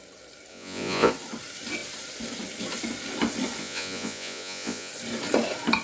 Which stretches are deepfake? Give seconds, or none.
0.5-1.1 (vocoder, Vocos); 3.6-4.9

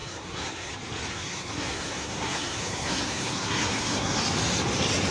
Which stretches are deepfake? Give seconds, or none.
0.0-0.7 (codec, SNAC); 1.1-4.2